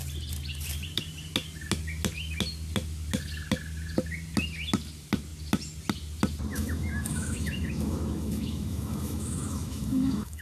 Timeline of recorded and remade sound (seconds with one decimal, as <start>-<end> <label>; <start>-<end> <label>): 0.0-6.5 recorded; 6.5-10.4 remade